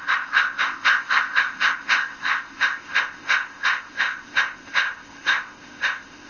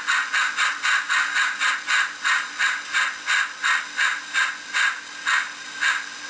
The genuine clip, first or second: second